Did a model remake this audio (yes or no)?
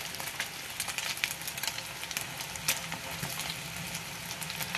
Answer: no